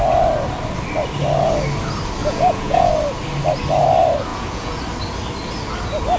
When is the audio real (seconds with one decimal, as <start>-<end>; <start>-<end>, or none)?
0.0-2.2; 2.9-4.3; 4.8-6.2